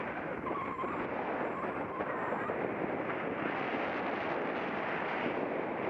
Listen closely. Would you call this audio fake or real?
real